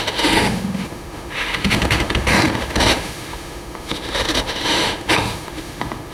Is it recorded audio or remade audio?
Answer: remade